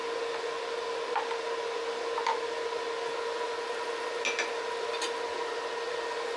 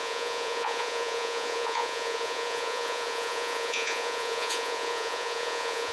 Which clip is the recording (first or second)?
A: first